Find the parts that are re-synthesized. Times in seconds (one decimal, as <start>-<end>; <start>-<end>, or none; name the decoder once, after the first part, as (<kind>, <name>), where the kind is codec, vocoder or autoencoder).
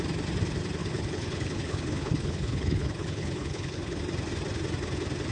0.8-4.0 (codec, HILCodec)